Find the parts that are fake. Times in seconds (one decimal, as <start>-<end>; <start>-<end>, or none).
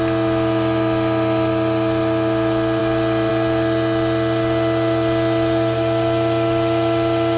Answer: none